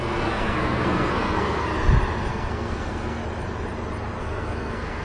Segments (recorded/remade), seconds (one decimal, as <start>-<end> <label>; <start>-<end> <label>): 0.0-1.7 remade; 1.7-2.3 recorded; 2.3-3.2 remade; 3.2-4.2 recorded; 4.2-5.0 remade